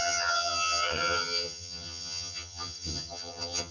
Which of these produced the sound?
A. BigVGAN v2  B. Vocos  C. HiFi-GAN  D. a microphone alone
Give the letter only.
C